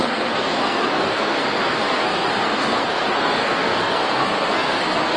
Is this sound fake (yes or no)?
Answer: yes